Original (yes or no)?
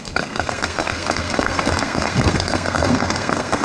no